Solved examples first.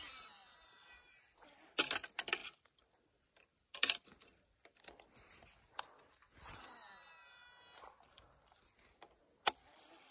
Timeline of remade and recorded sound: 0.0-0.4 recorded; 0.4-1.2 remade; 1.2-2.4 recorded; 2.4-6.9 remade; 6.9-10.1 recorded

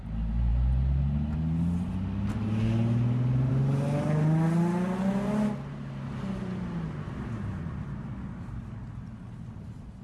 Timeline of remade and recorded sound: 0.0-10.0 recorded

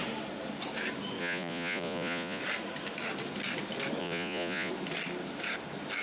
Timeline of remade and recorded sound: 0.0-1.2 recorded; 1.2-2.4 remade; 2.4-4.0 recorded; 4.0-4.7 remade; 4.7-6.0 recorded